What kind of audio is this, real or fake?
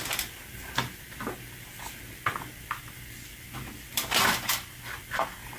real